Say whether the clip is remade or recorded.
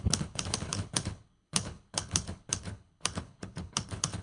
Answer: remade